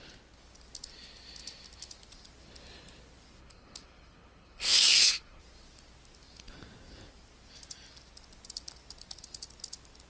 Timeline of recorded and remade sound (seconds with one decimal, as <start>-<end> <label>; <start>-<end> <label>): 0.0-3.4 recorded; 3.4-5.4 remade; 5.4-10.1 recorded